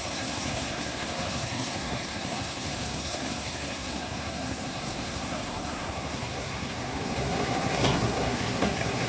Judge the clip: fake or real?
fake